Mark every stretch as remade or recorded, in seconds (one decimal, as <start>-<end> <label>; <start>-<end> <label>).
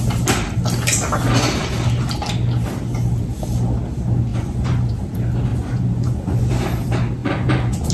0.0-4.3 recorded; 4.3-4.9 remade; 4.9-5.5 recorded; 5.5-6.5 remade; 6.5-7.2 recorded; 7.2-7.9 remade